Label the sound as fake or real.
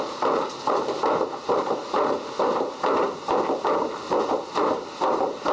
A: real